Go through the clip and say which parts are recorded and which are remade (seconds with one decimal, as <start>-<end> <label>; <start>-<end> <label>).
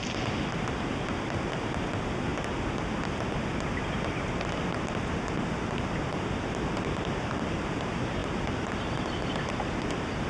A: 0.0-10.3 recorded